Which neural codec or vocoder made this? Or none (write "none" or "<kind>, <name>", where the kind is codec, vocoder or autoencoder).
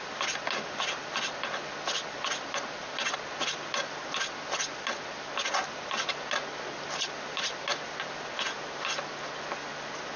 none